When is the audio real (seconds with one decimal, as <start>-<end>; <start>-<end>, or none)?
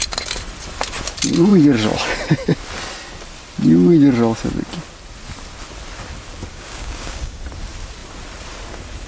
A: 0.0-6.5; 7.4-9.1